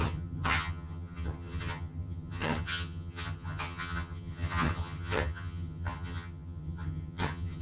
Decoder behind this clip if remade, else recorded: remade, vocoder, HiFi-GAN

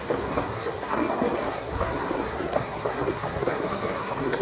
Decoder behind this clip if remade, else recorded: remade, codec, SNAC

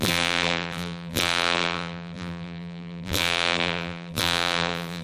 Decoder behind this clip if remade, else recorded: remade, vocoder, BigVGAN v2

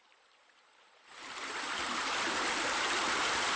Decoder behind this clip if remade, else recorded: remade, vocoder, BigVGAN v2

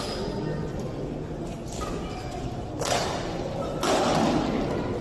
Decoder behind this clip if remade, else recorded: recorded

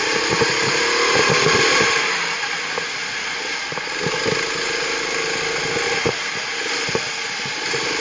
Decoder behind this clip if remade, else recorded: recorded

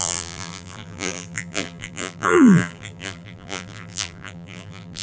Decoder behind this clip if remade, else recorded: remade, vocoder, BigVGAN v2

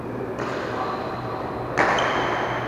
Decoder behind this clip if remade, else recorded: recorded